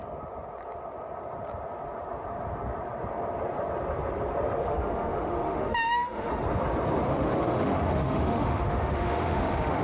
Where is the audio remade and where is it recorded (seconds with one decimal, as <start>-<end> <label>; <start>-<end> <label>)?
0.0-4.6 recorded; 4.6-6.3 remade; 6.3-7.1 recorded; 7.1-9.8 remade